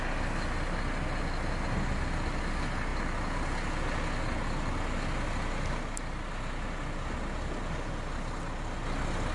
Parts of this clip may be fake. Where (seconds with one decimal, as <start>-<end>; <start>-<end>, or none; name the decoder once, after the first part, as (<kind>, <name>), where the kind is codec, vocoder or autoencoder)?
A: none